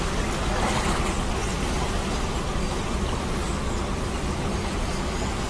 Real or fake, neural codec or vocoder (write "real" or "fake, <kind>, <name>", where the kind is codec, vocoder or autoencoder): real